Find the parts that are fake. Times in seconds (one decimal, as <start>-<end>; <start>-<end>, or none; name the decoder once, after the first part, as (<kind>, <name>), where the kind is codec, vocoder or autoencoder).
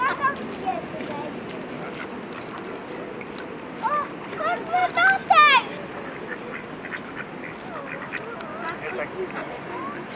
0.7-1.4 (vocoder, Vocos); 9.4-10.2